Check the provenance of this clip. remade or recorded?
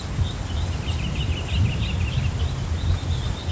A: recorded